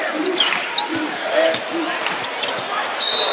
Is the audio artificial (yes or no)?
no